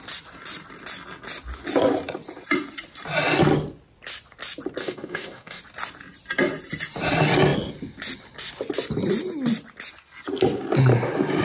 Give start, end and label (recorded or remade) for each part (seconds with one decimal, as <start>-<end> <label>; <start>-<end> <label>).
0.0-4.8 recorded; 4.8-5.6 remade; 5.6-11.4 recorded